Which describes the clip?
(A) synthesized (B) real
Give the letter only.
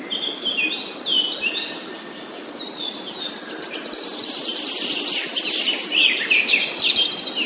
B